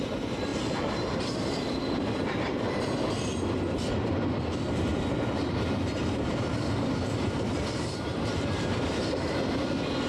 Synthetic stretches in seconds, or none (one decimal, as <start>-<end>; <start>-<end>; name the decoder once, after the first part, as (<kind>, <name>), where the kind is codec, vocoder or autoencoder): 0.5-2.6 (vocoder, BigVGAN v2); 4.9-9.5